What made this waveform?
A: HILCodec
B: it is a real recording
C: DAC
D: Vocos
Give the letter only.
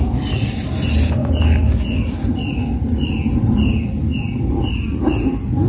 B